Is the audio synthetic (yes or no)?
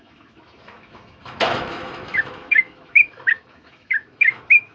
yes